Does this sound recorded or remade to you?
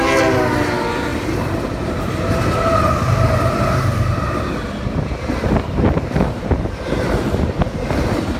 recorded